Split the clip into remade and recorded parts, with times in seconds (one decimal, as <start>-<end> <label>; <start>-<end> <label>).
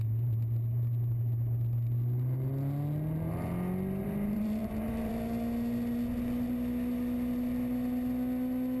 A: 0.0-4.0 recorded; 4.0-5.1 remade; 5.1-8.8 recorded